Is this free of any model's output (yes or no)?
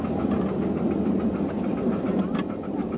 yes